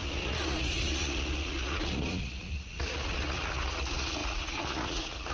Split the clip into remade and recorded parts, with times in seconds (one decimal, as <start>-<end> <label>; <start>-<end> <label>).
0.0-5.3 remade